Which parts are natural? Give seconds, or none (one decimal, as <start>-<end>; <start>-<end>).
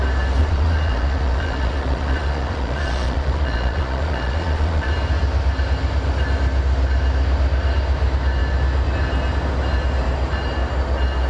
0.0-0.4; 4.9-11.3